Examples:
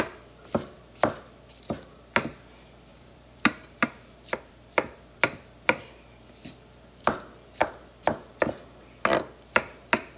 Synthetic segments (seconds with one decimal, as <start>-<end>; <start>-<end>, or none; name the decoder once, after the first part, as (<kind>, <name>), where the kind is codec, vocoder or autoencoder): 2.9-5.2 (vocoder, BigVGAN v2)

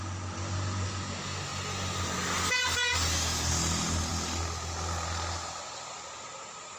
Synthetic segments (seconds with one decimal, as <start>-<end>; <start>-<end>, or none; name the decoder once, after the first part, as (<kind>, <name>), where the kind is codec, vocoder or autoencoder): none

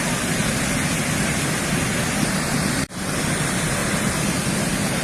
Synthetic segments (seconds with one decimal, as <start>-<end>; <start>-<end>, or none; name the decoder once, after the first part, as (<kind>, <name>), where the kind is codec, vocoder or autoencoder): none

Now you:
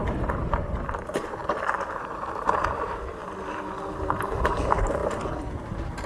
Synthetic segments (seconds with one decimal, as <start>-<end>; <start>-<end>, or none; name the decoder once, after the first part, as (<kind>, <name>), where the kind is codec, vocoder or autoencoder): 0.0-1.4 (vocoder, BigVGAN v2); 2.0-3.2; 4.2-5.0; 5.6-6.1

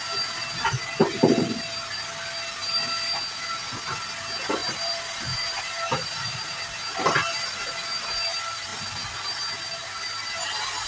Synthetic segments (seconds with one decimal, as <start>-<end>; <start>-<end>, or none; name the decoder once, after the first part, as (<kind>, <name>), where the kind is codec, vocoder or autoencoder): 2.6-3.1 (vocoder, BigVGAN v2); 4.6-6.7; 8.7-9.4

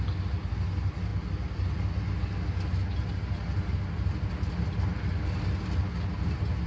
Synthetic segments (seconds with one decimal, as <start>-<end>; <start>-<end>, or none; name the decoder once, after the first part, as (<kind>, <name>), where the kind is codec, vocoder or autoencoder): none

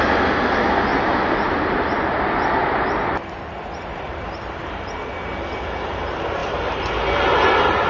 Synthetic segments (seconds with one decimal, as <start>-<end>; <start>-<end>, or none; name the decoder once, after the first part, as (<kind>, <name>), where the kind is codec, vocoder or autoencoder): 0.9-5.1 (vocoder, BigVGAN v2); 6.4-7.9

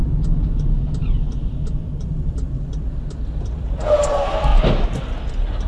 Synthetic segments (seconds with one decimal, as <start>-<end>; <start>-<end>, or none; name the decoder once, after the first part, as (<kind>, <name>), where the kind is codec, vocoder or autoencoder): 2.0-4.5 (vocoder, BigVGAN v2); 5.3-5.7